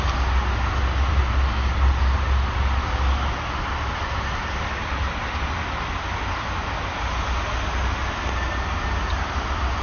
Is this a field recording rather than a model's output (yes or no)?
yes